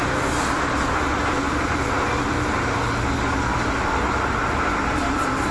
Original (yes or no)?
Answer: yes